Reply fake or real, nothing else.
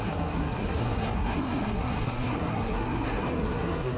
fake